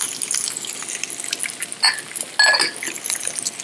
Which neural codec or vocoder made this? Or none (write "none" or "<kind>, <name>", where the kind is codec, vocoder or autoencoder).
none